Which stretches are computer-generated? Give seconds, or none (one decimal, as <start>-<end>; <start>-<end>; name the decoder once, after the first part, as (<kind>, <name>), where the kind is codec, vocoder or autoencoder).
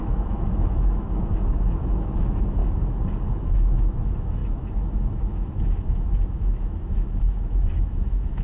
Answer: 0.0-2.6 (autoencoder, DAC-VAE); 3.3-8.4